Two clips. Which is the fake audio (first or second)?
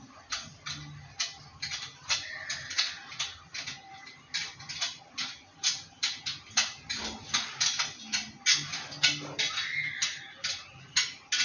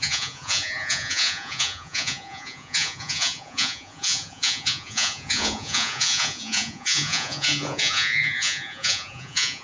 second